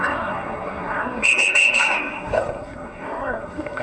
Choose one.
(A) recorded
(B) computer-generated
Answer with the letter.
B